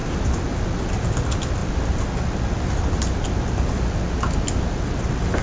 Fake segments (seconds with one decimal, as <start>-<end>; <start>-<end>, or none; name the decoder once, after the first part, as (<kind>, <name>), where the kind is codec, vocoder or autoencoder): 0.9-1.6 (vocoder, BigVGAN v2); 4.8-5.4